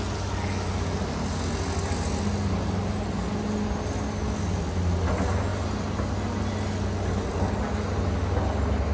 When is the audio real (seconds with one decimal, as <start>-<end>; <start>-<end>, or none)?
0.0-8.9